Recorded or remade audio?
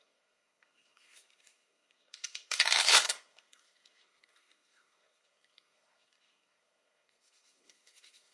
remade